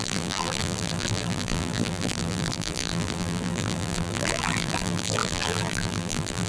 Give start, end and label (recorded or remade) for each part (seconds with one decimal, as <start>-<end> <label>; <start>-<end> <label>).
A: 0.0-6.5 remade